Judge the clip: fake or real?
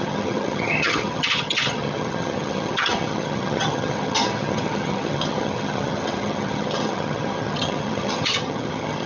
fake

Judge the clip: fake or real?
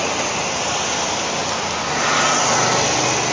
real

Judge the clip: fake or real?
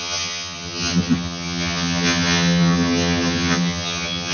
fake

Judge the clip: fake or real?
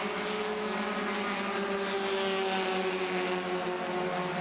real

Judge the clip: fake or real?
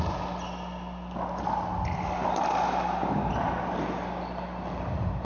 real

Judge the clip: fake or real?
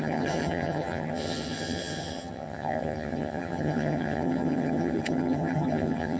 fake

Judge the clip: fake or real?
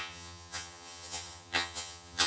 fake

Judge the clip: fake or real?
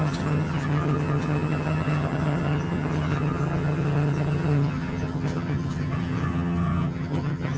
fake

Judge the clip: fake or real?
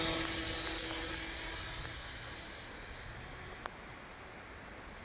real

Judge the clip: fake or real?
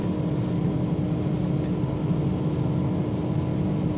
real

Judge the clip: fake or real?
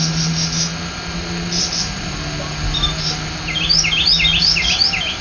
real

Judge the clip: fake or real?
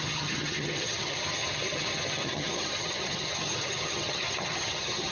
fake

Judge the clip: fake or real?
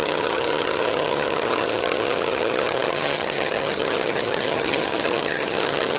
fake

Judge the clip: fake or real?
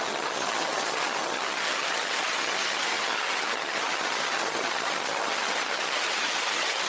fake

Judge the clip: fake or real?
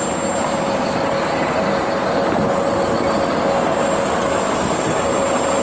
real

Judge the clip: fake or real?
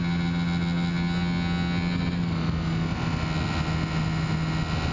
real